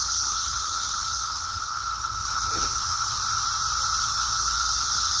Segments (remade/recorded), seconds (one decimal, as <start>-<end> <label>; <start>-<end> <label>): 0.0-3.2 remade; 3.2-4.0 recorded; 4.0-5.2 remade